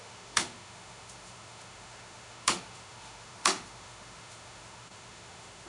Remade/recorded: remade